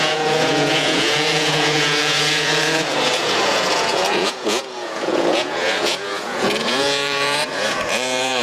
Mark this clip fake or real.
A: fake